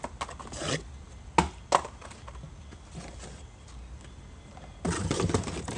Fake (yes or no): no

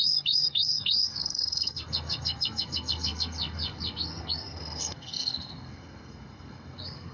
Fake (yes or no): yes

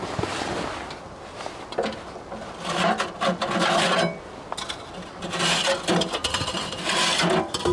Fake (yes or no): no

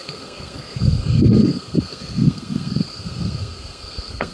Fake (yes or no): yes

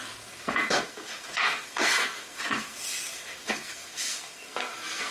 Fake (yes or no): yes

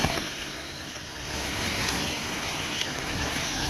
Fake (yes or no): yes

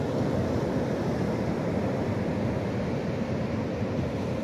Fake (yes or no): no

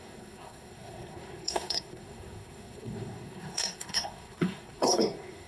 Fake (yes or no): yes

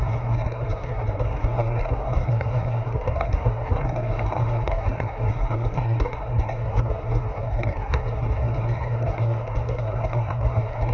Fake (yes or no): yes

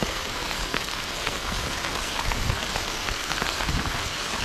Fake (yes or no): yes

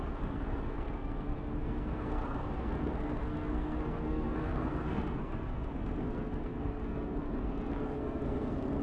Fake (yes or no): yes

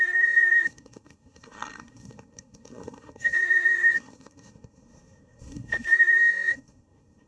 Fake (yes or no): yes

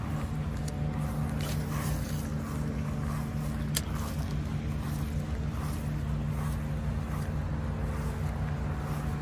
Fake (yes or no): no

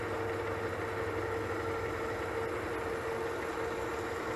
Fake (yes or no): no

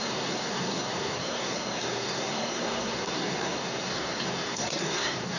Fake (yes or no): yes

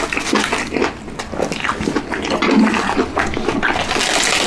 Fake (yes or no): no